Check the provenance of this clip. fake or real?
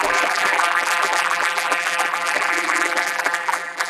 fake